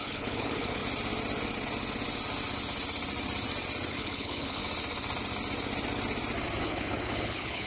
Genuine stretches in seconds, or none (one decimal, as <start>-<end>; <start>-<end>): 0.8-3.9; 4.6-6.6